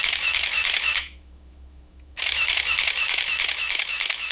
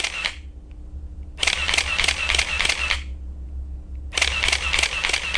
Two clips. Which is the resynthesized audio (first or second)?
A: first